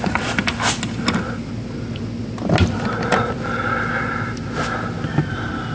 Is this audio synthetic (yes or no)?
no